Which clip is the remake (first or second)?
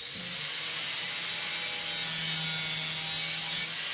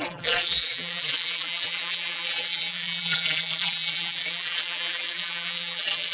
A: second